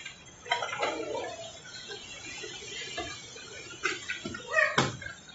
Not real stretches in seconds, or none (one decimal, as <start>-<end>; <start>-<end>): 0.7-3.9